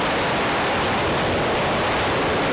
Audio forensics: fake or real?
real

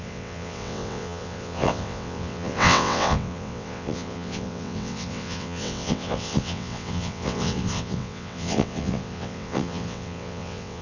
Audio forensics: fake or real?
fake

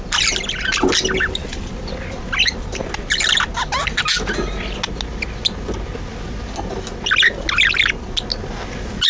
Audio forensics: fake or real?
real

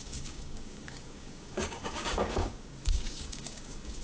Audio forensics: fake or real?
fake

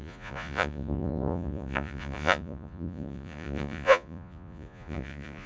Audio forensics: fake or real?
fake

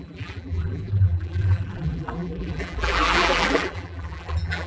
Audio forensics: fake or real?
fake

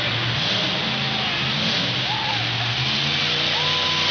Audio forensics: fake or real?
real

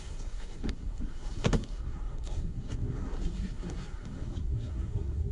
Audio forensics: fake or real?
fake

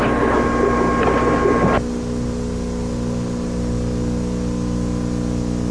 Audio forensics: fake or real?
real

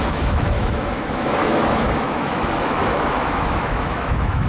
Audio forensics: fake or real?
fake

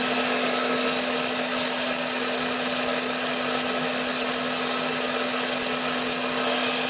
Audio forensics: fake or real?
real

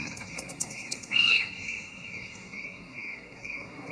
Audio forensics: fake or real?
fake